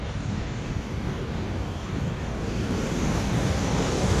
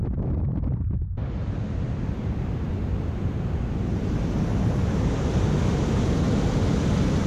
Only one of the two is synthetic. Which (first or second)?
first